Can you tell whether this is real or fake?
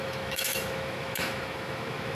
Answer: fake